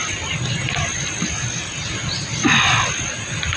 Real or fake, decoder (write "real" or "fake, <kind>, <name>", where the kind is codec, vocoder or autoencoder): real